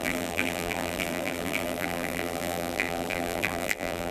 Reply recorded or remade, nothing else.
remade